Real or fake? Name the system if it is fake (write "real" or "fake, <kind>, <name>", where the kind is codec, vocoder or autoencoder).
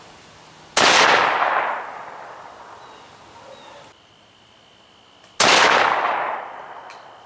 real